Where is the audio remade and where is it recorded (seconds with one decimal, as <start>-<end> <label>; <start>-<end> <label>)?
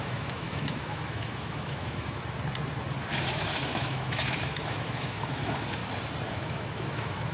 0.0-2.2 remade; 2.2-3.1 recorded; 3.1-5.8 remade; 5.8-6.3 recorded; 6.3-7.3 remade